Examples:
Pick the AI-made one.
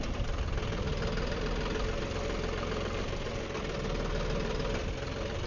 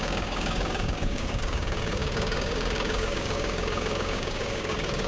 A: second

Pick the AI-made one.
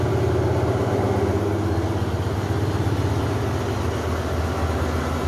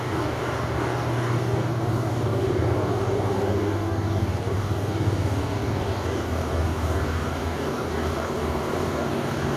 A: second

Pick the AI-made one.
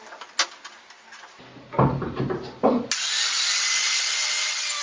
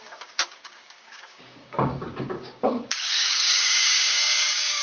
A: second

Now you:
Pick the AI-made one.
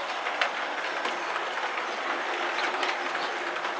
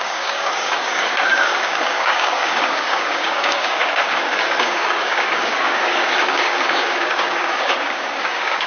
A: second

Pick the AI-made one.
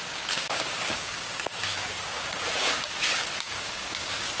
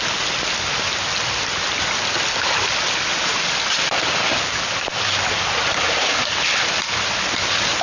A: first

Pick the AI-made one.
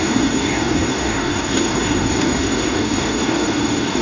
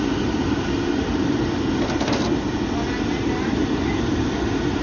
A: first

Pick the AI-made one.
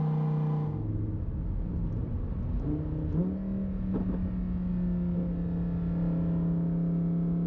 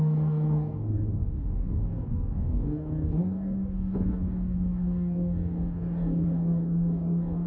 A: second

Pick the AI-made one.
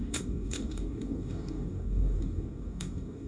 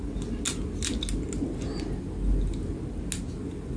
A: first